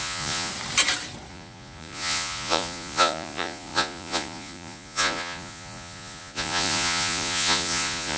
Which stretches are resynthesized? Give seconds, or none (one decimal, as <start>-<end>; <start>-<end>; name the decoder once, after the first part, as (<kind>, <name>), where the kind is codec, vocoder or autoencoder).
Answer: 0.0-0.5 (vocoder, Vocos); 1.3-8.2